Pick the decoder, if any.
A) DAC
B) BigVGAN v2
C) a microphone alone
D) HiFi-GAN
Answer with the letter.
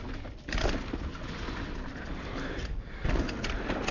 C